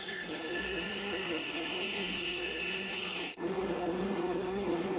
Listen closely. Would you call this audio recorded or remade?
remade